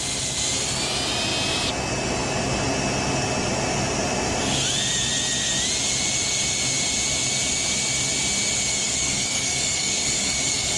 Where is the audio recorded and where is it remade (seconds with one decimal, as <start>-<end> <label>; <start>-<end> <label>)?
0.0-8.8 recorded; 8.8-10.8 remade